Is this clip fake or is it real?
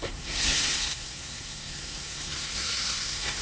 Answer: fake